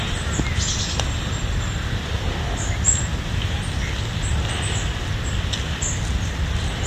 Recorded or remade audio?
recorded